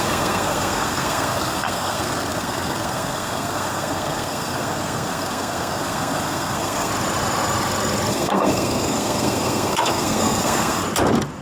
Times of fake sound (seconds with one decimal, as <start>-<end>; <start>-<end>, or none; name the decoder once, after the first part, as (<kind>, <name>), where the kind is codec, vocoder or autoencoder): 0.0-6.9 (codec, SNAC); 8.1-10.8